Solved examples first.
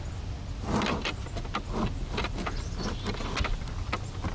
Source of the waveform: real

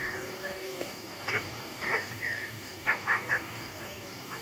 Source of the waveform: fake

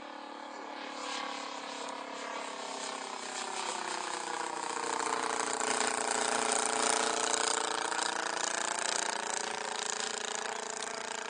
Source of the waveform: real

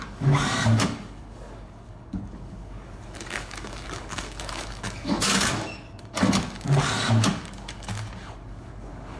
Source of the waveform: fake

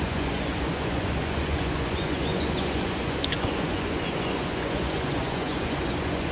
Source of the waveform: fake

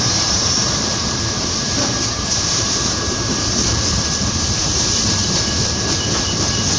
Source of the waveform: fake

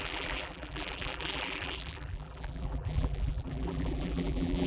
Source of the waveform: fake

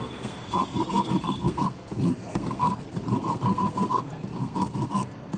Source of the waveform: fake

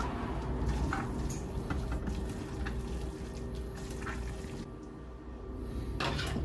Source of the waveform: real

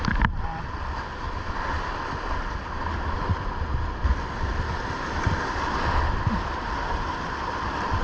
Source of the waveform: real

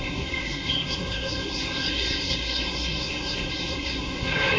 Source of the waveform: fake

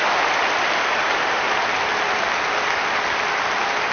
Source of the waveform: real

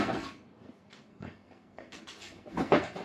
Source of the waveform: fake